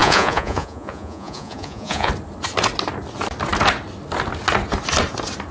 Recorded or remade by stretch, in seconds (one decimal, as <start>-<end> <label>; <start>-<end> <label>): 0.0-2.1 remade; 2.1-5.5 recorded